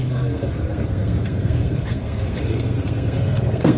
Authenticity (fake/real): fake